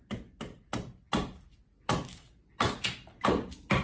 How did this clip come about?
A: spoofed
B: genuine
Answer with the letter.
B